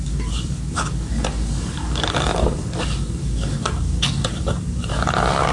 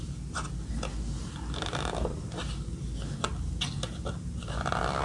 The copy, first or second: first